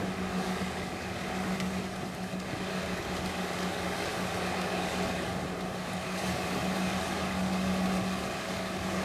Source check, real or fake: fake